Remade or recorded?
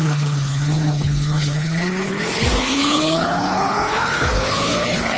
remade